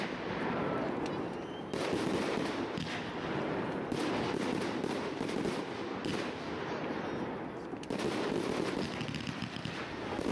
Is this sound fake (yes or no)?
no